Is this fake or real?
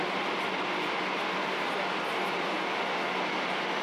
real